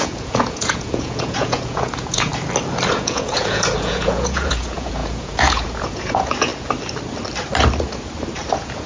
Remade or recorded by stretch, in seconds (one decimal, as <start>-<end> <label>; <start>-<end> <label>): 0.0-2.3 remade; 2.3-2.9 recorded; 2.9-6.5 remade; 6.5-8.5 recorded; 8.5-8.9 remade